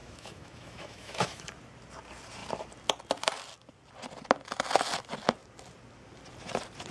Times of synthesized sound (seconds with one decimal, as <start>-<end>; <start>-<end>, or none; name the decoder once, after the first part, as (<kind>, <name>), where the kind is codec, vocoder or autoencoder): 0.0-1.5 (autoencoder, DAC-VAE)